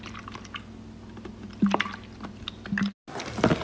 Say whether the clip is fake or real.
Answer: real